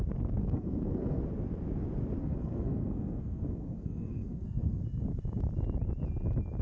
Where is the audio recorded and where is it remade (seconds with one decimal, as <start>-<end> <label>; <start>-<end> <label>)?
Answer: 0.0-0.4 recorded; 0.4-1.2 remade; 1.2-2.2 recorded; 2.2-4.8 remade; 4.8-6.6 recorded